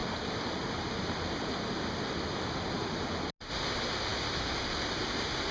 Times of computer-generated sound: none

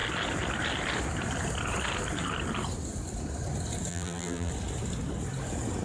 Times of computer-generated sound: 3.9-4.5